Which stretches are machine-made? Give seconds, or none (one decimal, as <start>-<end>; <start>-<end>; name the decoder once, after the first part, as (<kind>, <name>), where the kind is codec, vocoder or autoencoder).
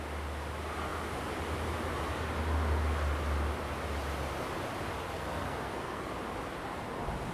5.0-6.1 (codec, SNAC)